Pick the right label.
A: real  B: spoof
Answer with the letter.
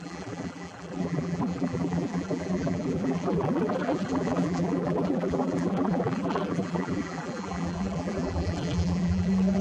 B